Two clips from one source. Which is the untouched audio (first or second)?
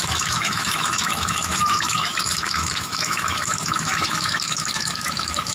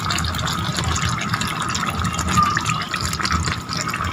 second